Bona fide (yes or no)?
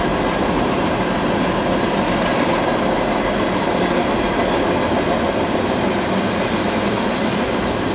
yes